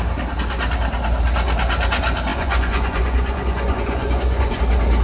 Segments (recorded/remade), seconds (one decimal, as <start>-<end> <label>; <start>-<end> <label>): 0.0-2.3 recorded; 2.3-4.6 remade; 4.6-5.0 recorded

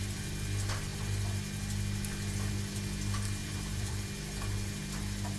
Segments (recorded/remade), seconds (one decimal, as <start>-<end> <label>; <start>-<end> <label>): 0.0-3.4 recorded; 3.4-4.0 remade; 4.0-5.4 recorded

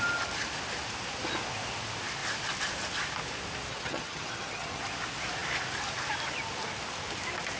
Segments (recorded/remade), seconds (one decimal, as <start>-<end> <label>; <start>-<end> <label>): 0.0-3.7 recorded; 3.7-4.8 remade; 4.8-7.6 recorded

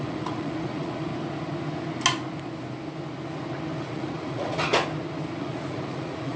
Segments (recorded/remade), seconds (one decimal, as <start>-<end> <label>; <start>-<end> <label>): 0.0-1.1 remade; 1.1-3.8 recorded; 3.8-4.7 remade; 4.7-5.4 recorded; 5.4-6.4 remade

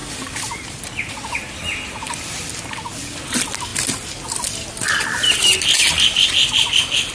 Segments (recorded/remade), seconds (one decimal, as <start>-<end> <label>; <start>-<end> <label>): 0.0-7.1 recorded

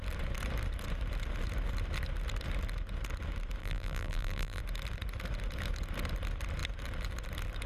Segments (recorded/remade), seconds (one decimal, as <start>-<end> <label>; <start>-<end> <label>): 0.0-3.6 recorded; 3.6-4.6 remade; 4.6-7.7 recorded